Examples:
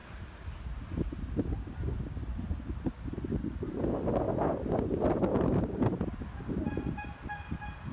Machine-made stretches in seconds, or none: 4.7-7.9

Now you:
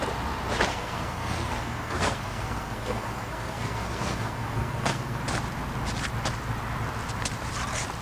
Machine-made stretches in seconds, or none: 0.7-5.2

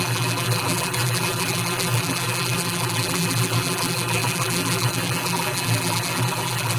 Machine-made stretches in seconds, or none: 0.0-6.8

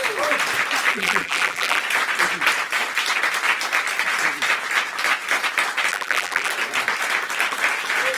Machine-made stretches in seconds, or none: 0.9-1.8; 5.9-6.5

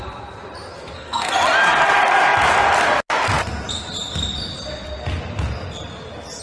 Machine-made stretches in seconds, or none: 0.7-1.3